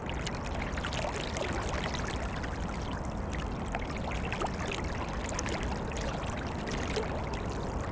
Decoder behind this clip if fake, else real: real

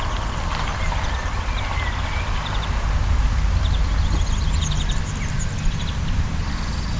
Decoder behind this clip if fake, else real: real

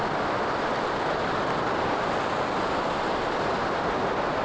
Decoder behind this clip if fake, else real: real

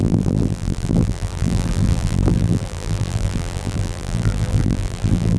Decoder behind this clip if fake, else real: fake, vocoder, BigVGAN v2